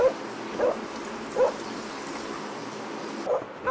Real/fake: real